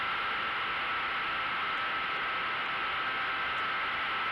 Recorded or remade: recorded